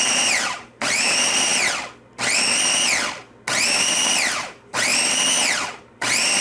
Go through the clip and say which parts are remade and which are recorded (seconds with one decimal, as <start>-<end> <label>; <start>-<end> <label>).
0.0-1.5 remade; 1.5-3.5 recorded; 3.5-4.9 remade; 4.9-5.5 recorded; 5.5-6.4 remade